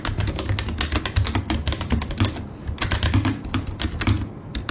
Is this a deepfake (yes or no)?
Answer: no